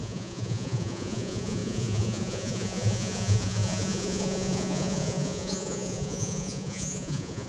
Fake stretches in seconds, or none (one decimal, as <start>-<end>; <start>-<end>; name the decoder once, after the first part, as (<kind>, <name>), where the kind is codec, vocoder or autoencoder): 0.0-7.5 (vocoder, Vocos)